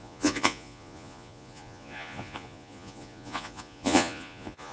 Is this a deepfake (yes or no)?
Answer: yes